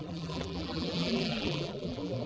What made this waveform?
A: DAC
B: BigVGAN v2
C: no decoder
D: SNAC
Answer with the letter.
B